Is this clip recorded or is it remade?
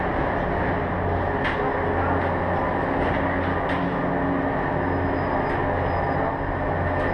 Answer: recorded